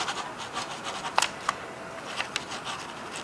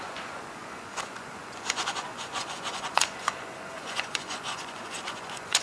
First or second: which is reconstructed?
second